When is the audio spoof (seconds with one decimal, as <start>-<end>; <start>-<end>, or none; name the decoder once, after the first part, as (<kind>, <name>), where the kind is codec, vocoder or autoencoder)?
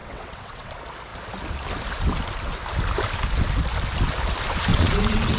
0.0-0.7 (vocoder, WaveNeXt); 4.7-5.4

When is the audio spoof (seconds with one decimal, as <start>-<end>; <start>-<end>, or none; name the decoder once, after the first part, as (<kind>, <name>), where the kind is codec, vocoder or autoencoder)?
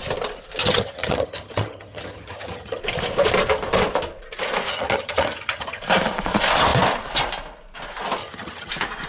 0.6-2.8 (vocoder, HiFi-GAN); 4.7-5.8; 8.2-8.7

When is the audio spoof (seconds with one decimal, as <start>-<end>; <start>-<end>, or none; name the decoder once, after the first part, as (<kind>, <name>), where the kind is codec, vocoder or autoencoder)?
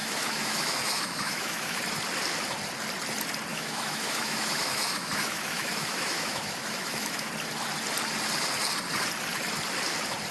0.0-1.8 (autoencoder, DAC-VAE); 3.5-7.3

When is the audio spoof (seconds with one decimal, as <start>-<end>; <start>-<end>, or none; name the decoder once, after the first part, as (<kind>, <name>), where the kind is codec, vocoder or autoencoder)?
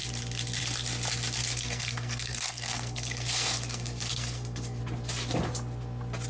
1.4-4.8 (codec, SNAC)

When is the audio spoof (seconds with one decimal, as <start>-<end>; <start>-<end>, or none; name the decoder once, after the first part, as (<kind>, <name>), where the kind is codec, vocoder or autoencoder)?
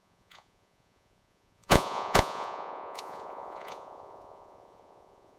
0.0-5.4 (vocoder, Vocos)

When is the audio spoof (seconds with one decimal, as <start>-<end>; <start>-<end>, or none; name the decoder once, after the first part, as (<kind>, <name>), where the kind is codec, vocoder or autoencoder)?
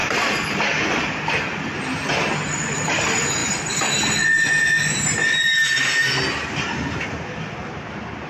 0.0-0.6 (vocoder, BigVGAN v2); 7.6-8.3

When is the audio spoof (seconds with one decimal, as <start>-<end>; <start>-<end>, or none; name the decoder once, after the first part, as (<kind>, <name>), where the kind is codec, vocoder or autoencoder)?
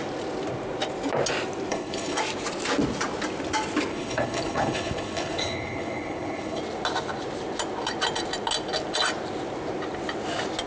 1.7-2.2 (codec, HILCodec); 3.9-6.6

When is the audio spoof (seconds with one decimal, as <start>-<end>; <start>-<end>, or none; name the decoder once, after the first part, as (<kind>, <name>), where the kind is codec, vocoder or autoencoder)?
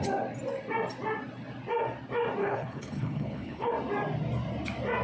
2.4-3.7 (codec, HILCodec)